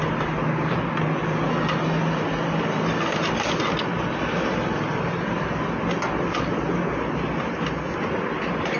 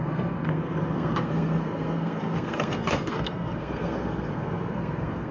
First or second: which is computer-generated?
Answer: second